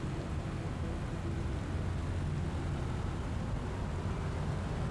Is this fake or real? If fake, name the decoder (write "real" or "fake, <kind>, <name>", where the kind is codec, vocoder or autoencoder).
real